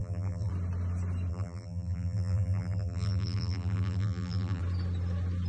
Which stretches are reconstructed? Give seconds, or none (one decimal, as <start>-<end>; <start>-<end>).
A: 0.0-0.5; 1.3-4.6

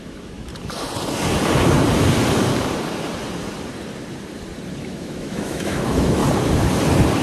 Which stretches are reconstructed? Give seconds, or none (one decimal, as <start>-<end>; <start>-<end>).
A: 0.0-0.5; 4.8-6.2

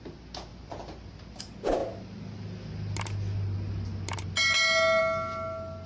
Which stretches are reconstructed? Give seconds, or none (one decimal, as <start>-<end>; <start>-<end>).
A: none

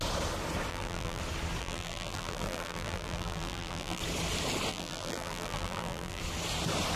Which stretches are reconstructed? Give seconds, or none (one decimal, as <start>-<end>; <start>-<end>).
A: 0.7-1.2; 1.6-4.0; 4.7-6.2